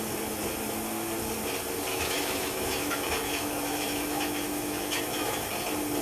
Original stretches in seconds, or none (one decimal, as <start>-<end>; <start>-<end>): 0.0-1.9; 5.5-6.0